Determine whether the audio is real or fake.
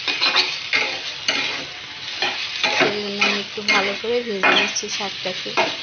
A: real